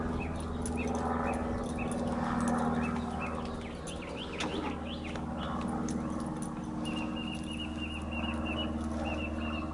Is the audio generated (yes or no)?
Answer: no